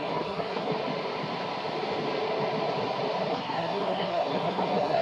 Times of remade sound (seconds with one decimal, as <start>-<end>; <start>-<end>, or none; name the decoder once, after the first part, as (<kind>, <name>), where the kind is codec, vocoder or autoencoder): 0.0-0.7 (codec, SNAC); 3.3-5.0